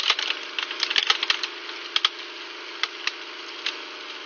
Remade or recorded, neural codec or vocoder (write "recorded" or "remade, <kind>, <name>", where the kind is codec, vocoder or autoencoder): recorded